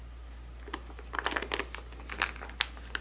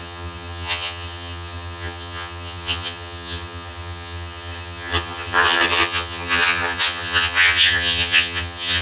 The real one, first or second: first